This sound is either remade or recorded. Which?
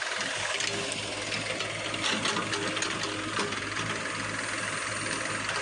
recorded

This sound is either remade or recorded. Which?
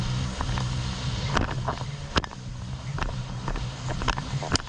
recorded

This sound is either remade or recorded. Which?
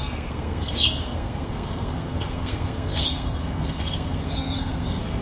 remade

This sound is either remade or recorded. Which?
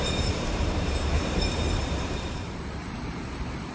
remade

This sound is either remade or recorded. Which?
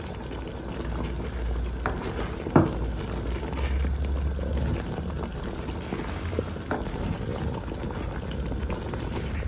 recorded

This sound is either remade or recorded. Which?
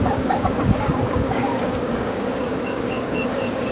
remade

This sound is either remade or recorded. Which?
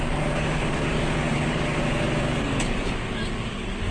remade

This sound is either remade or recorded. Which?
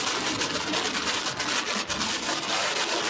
recorded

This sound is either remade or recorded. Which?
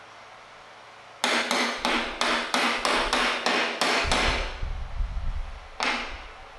recorded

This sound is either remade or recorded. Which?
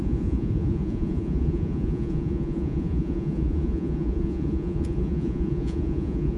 remade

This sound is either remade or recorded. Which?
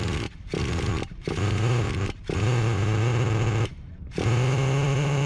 remade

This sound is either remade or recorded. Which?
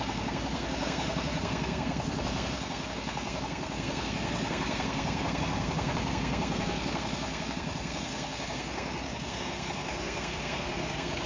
remade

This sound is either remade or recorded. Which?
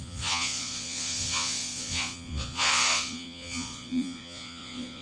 remade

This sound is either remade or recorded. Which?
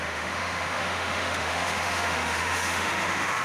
remade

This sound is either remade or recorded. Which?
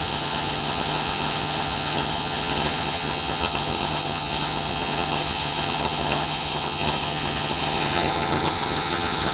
remade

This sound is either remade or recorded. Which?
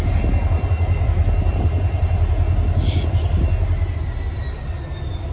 recorded